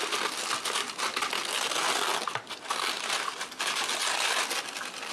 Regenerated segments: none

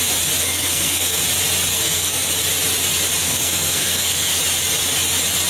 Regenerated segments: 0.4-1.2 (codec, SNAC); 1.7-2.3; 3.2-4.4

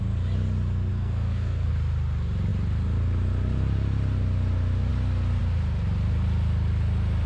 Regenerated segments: 0.9-1.7 (codec, SNAC)

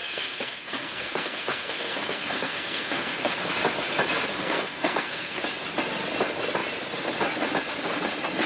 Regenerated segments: 0.0-3.4 (codec, SNAC); 4.3-5.4